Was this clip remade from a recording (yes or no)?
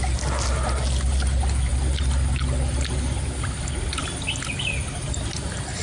no